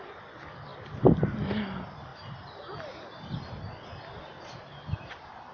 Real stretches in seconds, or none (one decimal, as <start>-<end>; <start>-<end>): 0.0-5.5